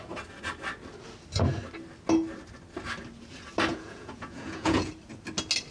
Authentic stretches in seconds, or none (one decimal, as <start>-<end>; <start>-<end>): 0.0-3.7; 4.9-5.7